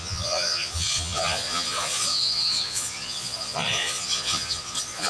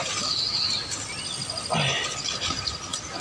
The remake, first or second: first